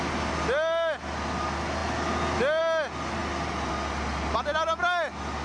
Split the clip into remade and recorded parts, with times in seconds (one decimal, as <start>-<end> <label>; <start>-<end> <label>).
0.0-5.4 recorded